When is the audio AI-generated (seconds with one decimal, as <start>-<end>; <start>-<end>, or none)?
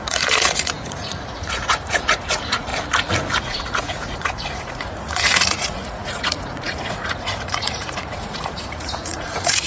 0.0-2.7; 3.4-9.7